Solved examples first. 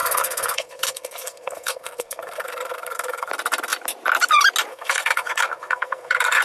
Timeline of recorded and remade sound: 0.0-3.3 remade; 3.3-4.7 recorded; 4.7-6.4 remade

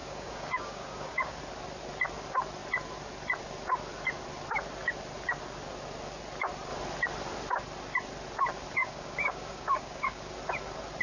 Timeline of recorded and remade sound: 0.0-1.4 remade; 1.4-8.8 recorded; 8.8-10.2 remade; 10.2-11.0 recorded

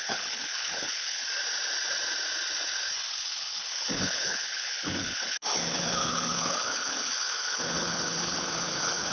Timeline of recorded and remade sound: 0.0-1.2 remade; 1.2-3.1 recorded; 3.1-9.1 remade

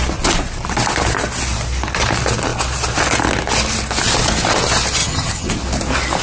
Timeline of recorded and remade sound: 0.0-5.0 recorded; 5.0-5.5 remade; 5.5-6.2 recorded